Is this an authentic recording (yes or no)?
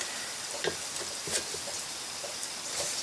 yes